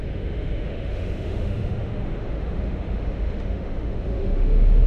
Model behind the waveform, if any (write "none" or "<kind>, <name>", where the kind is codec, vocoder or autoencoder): autoencoder, DAC-VAE